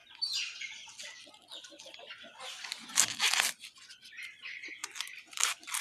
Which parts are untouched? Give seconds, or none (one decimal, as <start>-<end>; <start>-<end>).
1.3-4.8